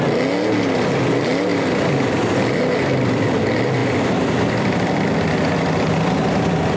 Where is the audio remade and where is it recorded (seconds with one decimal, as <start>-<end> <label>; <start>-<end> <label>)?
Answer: 0.0-1.5 recorded; 1.5-3.4 remade; 3.4-3.8 recorded; 3.8-5.3 remade; 5.3-6.8 recorded